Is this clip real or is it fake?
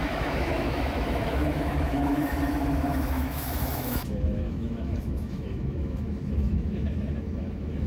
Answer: fake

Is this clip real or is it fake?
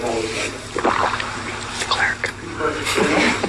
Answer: real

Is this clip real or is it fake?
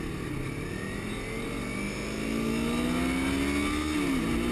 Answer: real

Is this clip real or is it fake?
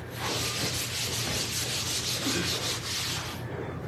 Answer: real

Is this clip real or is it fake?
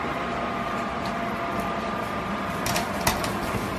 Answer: real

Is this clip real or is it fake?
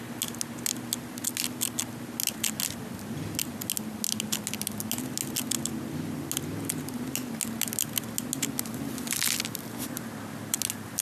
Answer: real